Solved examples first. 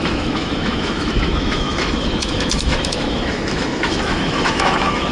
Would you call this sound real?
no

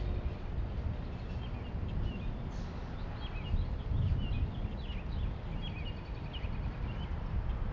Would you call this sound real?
yes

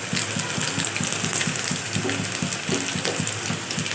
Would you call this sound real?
yes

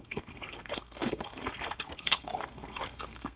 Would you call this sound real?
no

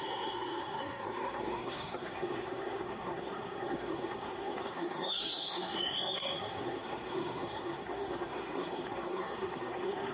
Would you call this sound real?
no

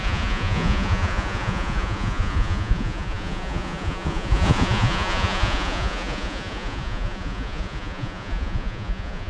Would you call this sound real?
no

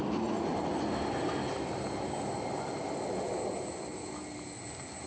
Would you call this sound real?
yes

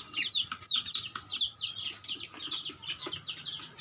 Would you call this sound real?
yes